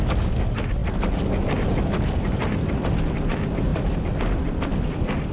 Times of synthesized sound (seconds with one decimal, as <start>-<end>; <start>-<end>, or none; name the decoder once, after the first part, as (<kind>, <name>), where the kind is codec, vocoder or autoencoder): none